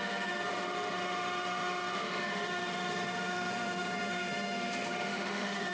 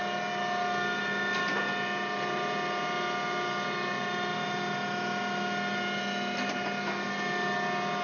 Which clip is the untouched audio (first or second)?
second